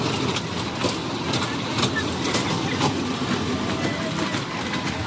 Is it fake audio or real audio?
real